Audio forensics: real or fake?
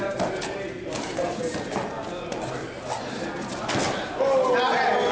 real